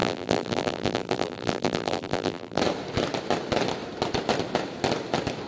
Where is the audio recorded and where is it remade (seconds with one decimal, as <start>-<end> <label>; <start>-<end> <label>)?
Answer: 0.0-2.6 remade; 2.6-5.5 recorded